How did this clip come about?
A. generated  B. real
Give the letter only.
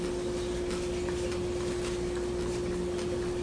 B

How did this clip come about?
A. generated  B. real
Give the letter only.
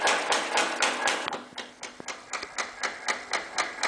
B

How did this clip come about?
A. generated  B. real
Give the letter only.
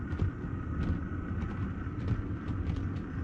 B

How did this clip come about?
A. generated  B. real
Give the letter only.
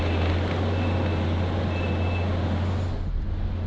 B